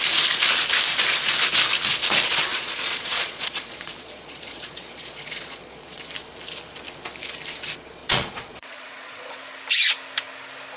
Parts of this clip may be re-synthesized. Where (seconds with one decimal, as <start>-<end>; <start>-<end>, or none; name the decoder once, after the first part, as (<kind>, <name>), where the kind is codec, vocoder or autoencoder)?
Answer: 2.5-6.0 (vocoder, Vocos); 8.0-9.4